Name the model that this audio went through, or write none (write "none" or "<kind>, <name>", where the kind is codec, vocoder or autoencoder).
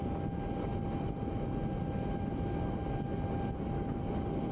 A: none